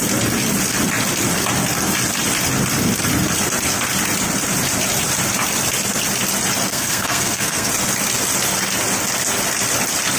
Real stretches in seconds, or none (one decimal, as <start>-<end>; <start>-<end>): 0.0-6.7; 7.7-10.2